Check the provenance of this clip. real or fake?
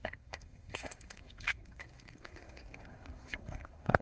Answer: fake